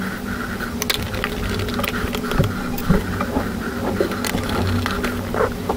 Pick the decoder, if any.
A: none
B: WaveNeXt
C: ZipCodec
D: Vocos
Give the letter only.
A